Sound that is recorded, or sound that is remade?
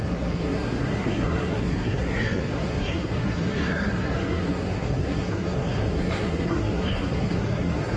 remade